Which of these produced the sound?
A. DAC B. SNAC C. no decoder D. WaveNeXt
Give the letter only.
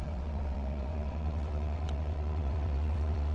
D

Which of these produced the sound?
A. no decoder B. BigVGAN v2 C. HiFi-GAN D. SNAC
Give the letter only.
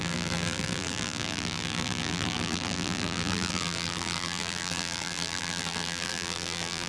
B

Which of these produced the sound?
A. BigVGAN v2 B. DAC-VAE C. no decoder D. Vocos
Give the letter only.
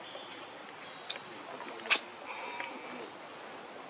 C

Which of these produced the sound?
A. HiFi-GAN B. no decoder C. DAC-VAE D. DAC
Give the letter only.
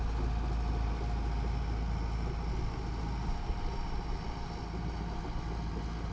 B